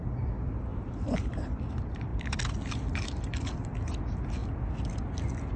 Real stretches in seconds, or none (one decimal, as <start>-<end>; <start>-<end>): 0.0-0.7; 1.3-5.6